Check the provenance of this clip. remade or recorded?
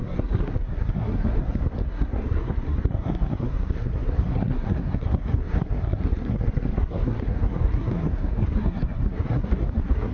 remade